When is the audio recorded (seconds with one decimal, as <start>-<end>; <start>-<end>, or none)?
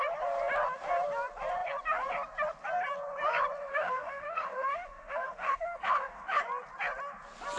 0.0-3.7; 6.4-7.6